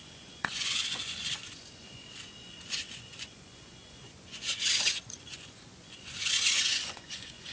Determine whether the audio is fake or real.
fake